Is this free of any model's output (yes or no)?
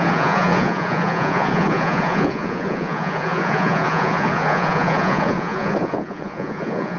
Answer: no